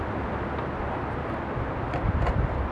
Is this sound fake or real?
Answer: real